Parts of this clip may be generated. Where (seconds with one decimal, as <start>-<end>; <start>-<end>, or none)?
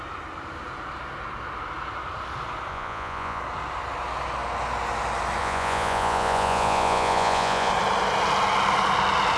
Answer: 2.7-3.4; 5.4-7.7